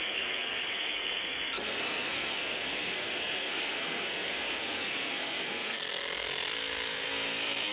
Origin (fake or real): fake